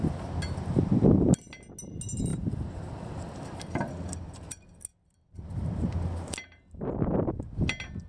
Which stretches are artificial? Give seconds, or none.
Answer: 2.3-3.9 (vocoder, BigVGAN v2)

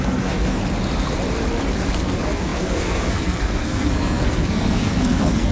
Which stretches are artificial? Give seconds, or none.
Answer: 0.0-0.6 (codec, SNAC); 2.0-5.5

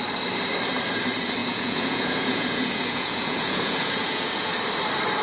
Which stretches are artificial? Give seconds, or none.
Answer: 1.4-4.5 (vocoder, Vocos)

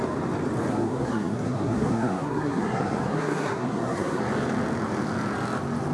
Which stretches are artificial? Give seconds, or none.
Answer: 0.7-4.2 (codec, SNAC)

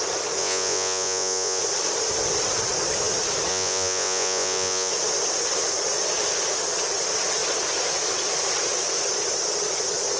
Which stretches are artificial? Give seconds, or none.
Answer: 0.4-1.6 (vocoder, Vocos); 3.5-4.9

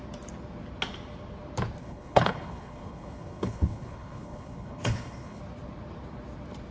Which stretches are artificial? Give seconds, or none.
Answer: 1.8-5.4 (codec, HILCodec)

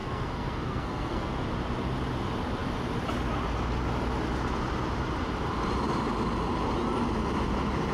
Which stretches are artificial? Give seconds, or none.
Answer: 0.0-1.3 (codec, SNAC)